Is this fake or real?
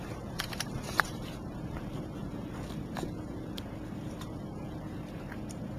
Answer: fake